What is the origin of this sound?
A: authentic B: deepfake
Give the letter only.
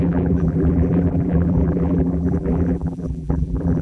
B